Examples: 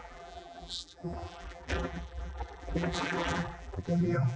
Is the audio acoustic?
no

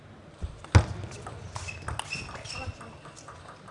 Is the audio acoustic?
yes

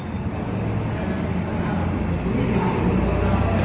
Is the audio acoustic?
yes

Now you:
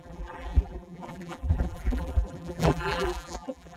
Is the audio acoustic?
no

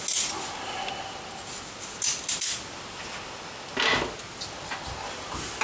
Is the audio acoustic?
yes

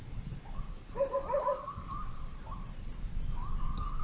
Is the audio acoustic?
no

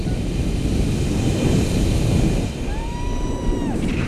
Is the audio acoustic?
no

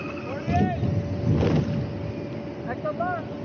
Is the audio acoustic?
yes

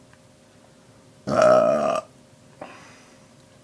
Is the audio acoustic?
yes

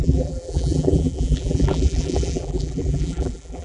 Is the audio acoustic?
no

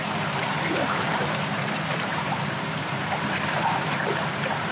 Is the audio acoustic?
no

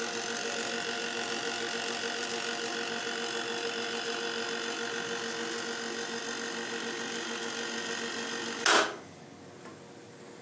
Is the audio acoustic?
yes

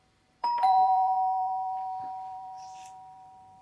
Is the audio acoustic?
no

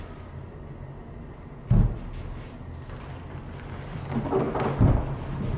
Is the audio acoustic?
yes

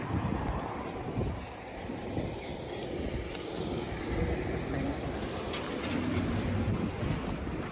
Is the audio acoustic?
no